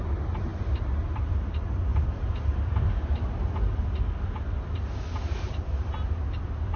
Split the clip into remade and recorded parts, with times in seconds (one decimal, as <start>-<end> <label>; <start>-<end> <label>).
0.0-6.8 recorded